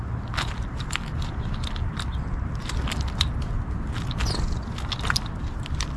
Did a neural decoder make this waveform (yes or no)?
no